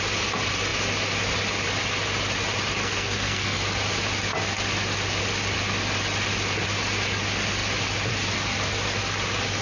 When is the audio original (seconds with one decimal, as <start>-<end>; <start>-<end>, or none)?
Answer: 0.0-2.8; 3.6-9.6